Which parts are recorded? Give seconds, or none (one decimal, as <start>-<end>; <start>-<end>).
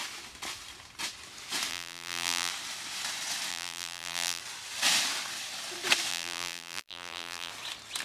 0.0-1.7; 2.5-3.5; 4.4-6.1; 7.5-8.0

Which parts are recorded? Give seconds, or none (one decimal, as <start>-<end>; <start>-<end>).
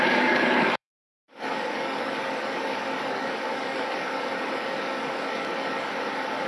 none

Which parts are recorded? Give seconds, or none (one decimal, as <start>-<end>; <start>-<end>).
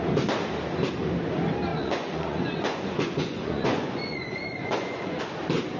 0.0-1.7; 5.2-5.8